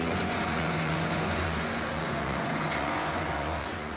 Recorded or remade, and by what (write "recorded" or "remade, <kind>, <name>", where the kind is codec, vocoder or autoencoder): remade, vocoder, Vocos